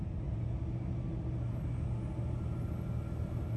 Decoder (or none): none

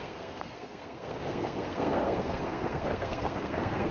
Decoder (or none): codec, SNAC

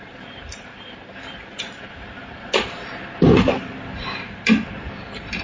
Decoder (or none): vocoder, BigVGAN v2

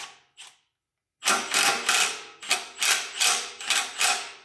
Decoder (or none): none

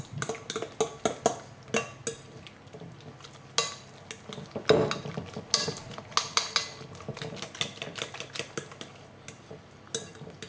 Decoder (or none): none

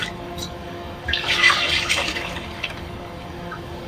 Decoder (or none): codec, DAC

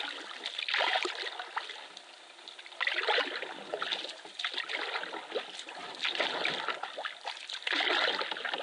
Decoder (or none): none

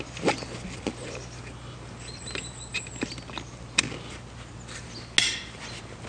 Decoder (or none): none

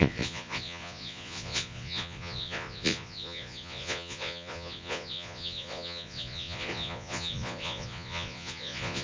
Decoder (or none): vocoder, Vocos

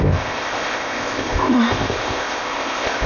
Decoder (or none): codec, ZipCodec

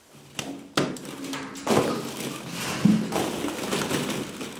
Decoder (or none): none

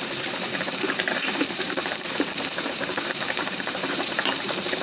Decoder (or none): vocoder, BigVGAN v2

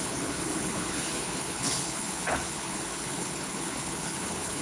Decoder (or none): codec, HILCodec